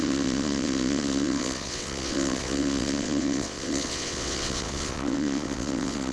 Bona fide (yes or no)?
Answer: no